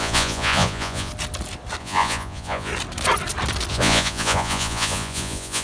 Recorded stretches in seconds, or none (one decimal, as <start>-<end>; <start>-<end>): 1.1-1.8; 2.7-3.7